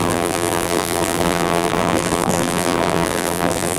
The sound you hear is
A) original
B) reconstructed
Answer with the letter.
B